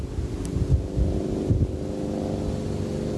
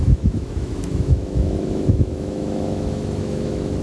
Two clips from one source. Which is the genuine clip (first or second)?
first